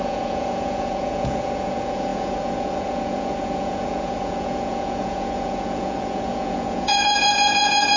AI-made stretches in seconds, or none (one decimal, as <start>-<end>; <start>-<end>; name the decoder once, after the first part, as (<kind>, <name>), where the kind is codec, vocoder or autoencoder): 0.0-8.0 (vocoder, Vocos)